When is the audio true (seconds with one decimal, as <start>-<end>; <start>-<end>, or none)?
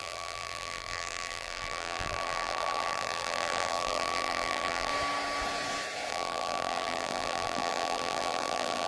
4.9-6.1